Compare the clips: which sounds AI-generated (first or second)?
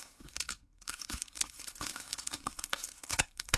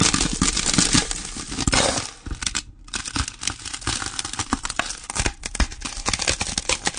first